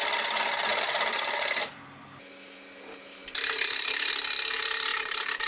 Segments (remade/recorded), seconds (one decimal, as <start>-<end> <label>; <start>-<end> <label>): 0.0-0.7 recorded; 0.7-1.7 remade; 1.7-3.2 recorded; 3.2-4.1 remade; 4.1-4.9 recorded; 4.9-5.5 remade